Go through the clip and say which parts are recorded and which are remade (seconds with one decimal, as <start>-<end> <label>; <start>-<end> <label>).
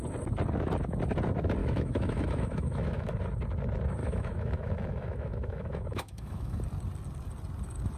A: 0.0-1.6 recorded; 1.6-3.2 remade; 3.2-4.0 recorded; 4.0-6.6 remade; 6.6-8.0 recorded